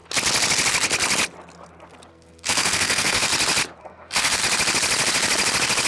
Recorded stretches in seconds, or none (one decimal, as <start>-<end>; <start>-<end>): 0.0-2.1; 3.3-3.8; 4.4-5.9

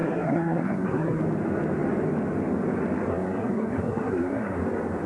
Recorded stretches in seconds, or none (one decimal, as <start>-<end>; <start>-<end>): 1.2-3.1; 4.6-5.1

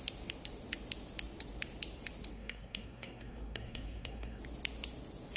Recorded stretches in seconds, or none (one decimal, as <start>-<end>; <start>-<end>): 0.0-2.3; 4.4-5.4

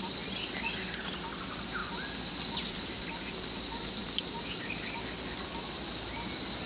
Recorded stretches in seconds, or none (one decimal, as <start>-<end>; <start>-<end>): 0.0-6.7

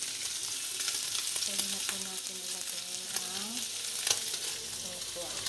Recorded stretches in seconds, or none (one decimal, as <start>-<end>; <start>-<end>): 0.0-5.5

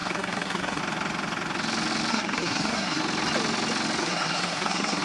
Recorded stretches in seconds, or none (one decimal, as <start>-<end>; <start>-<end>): 0.8-2.1; 3.0-4.0

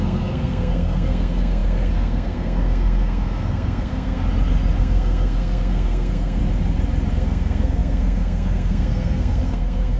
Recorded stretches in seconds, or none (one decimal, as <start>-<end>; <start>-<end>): 4.2-4.8; 6.4-7.1